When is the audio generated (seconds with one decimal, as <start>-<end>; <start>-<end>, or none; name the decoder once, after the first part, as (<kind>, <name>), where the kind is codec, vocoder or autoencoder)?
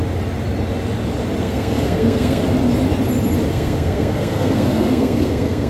1.4-2.4 (codec, SNAC); 3.5-5.7